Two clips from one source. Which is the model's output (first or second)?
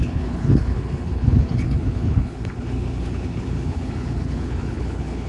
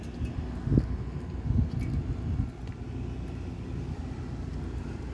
first